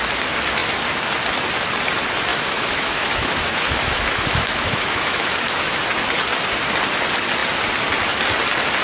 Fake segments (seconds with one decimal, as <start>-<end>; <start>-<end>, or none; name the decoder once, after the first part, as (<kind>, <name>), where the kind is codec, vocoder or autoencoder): 2.3-5.8 (autoencoder, DAC-VAE)

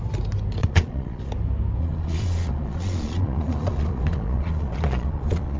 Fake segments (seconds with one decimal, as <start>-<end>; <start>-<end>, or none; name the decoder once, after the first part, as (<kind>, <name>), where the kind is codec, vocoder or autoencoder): 0.6-1.3 (vocoder, Vocos); 1.8-5.6

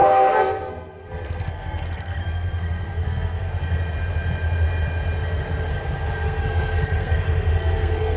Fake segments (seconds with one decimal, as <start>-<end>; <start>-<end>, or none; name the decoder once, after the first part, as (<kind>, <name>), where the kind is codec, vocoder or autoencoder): 0.0-3.5 (codec, SNAC); 5.7-8.2

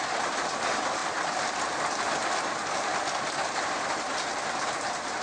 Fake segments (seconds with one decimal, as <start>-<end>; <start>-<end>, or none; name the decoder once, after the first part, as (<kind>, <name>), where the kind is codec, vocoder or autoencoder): 0.0-1.0 (vocoder, BigVGAN v2); 3.7-4.3

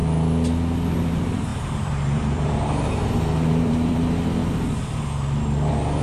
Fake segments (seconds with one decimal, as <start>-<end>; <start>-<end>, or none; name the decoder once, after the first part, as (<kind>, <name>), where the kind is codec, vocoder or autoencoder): 0.9-4.4 (vocoder, BigVGAN v2)

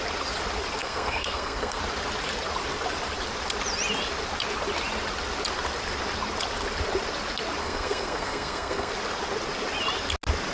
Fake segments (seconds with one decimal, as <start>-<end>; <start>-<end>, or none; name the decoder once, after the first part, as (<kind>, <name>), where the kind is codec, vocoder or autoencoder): 0.8-1.8 (codec, SNAC); 7.6-8.9

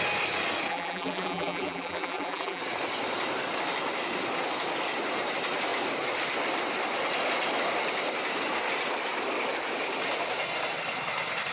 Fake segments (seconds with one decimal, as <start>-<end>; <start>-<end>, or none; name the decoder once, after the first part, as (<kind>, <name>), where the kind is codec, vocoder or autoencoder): 0.7-2.6 (vocoder, BigVGAN v2)

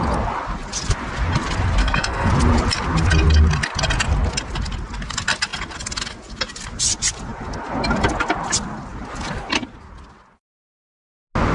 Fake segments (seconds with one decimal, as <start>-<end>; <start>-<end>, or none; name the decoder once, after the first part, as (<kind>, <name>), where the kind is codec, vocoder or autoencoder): 1.8-2.3 (codec, SNAC)